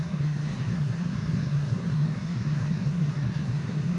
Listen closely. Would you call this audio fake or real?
fake